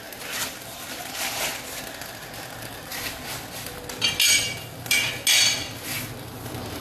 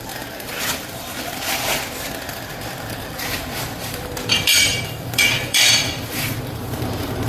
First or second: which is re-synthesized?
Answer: second